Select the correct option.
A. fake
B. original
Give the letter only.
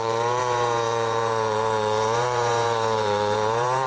A